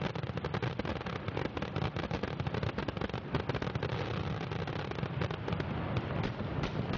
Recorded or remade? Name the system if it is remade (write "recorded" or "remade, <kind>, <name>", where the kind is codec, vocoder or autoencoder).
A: recorded